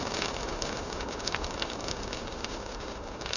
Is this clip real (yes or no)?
no